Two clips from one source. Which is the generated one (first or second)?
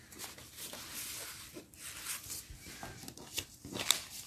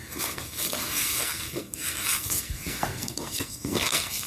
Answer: second